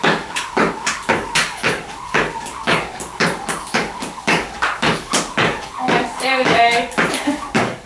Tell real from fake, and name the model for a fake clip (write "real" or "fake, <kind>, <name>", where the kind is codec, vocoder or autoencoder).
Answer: fake, codec, DAC